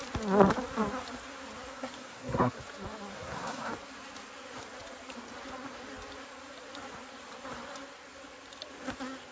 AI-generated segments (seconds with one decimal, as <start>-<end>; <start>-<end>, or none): 1.7-2.6; 3.1-3.7